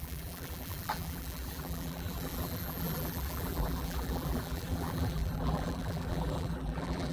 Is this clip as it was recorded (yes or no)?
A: no